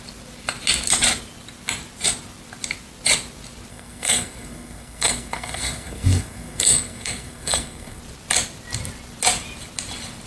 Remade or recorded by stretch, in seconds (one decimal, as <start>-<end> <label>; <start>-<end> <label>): 0.0-3.7 recorded; 3.7-8.0 remade; 8.0-10.3 recorded